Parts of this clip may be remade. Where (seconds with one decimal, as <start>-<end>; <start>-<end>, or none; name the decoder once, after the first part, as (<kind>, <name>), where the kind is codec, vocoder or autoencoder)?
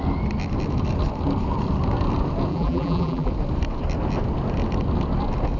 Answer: 2.5-3.3 (vocoder, BigVGAN v2)